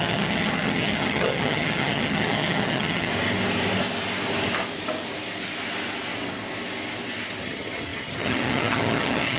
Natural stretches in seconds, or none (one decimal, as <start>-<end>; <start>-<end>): 3.1-7.4